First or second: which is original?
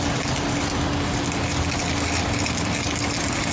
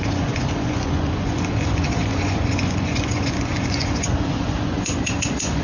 first